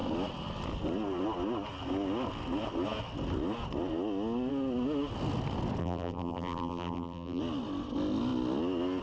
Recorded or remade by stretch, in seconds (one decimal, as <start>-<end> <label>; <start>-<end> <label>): 0.0-5.8 recorded; 5.8-7.4 remade; 7.4-9.0 recorded